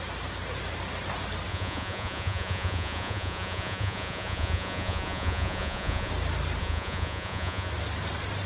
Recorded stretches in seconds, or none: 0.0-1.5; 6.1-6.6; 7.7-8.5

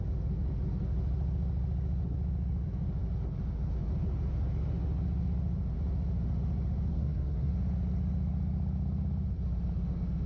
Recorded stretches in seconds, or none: 0.0-6.9; 7.5-10.3

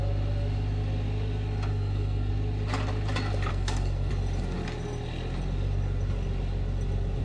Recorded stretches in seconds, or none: 0.0-1.7; 2.3-3.5; 4.1-7.2